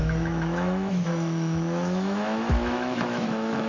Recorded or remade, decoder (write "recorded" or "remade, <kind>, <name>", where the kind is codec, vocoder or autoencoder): remade, autoencoder, DAC-VAE